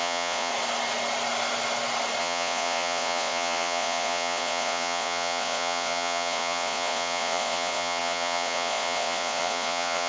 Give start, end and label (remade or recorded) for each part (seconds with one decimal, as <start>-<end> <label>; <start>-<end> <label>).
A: 0.0-0.5 remade; 0.5-2.2 recorded; 2.2-10.1 remade